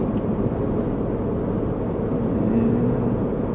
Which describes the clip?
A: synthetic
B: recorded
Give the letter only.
B